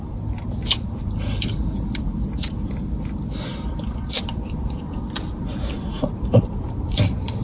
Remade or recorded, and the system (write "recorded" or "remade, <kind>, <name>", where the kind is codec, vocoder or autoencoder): remade, vocoder, BigVGAN v2